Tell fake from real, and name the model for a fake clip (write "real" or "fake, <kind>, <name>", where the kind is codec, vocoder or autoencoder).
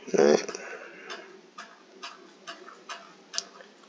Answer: real